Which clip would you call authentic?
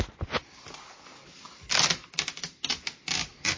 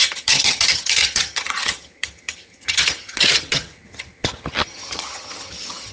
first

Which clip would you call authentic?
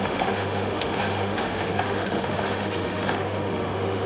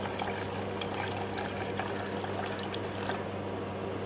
second